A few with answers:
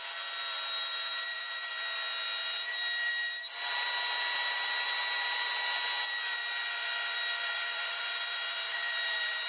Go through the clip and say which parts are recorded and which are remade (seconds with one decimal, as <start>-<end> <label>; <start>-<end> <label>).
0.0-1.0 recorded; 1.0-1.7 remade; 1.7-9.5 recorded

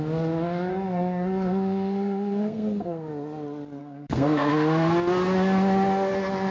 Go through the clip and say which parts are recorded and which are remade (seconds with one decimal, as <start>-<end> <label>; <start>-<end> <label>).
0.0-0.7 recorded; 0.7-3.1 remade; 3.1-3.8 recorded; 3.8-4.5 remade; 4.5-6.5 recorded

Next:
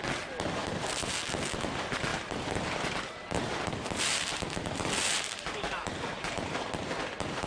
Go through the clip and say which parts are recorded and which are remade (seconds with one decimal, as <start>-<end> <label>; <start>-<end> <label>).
0.0-0.6 recorded; 0.6-1.1 remade; 1.1-2.1 recorded; 2.1-6.6 remade; 6.6-7.5 recorded

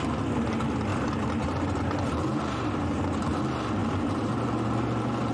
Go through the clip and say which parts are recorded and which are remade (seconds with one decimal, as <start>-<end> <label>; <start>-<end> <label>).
0.0-0.9 recorded; 0.9-3.4 remade; 3.4-3.8 recorded; 3.8-4.4 remade; 4.4-5.3 recorded

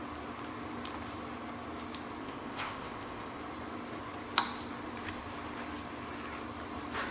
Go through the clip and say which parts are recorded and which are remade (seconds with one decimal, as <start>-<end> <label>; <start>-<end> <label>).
0.0-2.2 recorded; 2.2-3.4 remade; 3.4-7.1 recorded